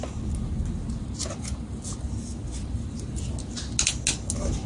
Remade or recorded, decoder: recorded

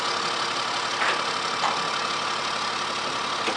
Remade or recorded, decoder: recorded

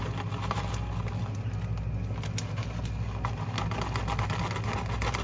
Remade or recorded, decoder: recorded